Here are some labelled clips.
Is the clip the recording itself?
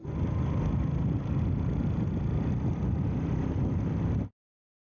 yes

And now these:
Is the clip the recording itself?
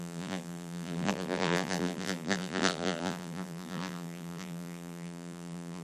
no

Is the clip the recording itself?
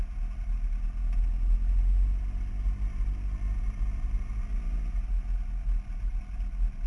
yes